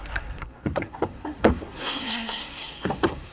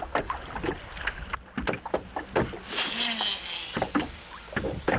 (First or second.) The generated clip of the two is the first